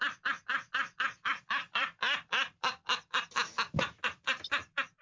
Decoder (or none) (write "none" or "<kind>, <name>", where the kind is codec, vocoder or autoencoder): vocoder, BigVGAN v2